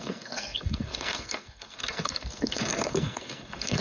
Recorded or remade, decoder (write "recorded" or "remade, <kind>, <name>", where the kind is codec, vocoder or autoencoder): remade, codec, SNAC